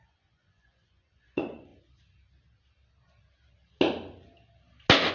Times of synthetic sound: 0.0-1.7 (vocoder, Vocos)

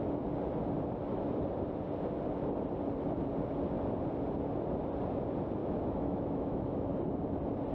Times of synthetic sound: 5.6-6.9 (autoencoder, DAC-VAE)

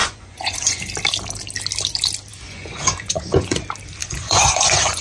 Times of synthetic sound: 0.0-0.8 (vocoder, Vocos); 2.3-3.6; 4.0-5.0

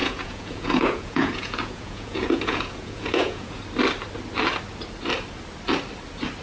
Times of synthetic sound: 0.0-3.6 (vocoder, Vocos)